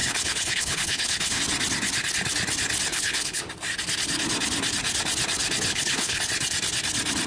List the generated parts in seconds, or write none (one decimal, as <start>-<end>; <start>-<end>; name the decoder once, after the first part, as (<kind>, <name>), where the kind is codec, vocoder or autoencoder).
0.0-1.4 (codec, HILCodec); 2.9-3.4; 5.7-6.2